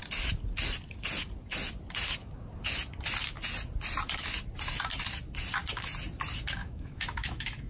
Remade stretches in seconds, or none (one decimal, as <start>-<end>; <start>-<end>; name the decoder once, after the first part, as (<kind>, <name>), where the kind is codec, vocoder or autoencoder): 6.6-7.7 (autoencoder, DAC-VAE)